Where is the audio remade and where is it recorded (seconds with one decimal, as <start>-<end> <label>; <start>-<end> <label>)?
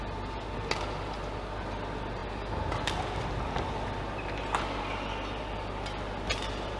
0.0-6.8 recorded